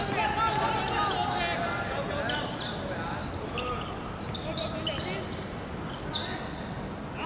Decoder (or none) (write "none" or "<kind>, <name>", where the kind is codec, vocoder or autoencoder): none